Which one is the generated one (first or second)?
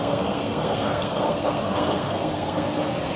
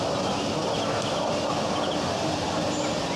first